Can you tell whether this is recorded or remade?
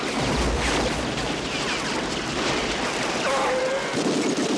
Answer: recorded